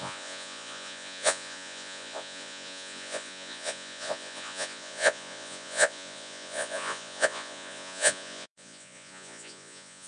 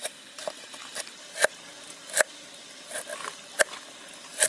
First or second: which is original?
second